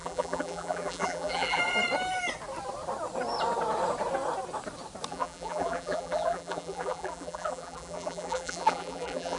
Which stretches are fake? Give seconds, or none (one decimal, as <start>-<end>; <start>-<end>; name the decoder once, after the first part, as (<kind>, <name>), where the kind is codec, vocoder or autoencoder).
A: 0.0-1.6 (vocoder, BigVGAN v2); 5.1-9.4

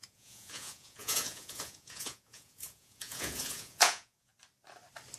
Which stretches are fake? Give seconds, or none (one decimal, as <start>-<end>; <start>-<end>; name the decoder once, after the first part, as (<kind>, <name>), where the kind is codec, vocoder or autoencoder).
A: 0.0-4.3 (vocoder, Vocos)

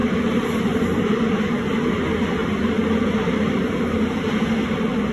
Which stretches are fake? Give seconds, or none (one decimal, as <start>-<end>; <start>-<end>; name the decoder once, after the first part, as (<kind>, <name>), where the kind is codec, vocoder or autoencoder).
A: 0.0-1.6 (vocoder, BigVGAN v2); 2.4-3.2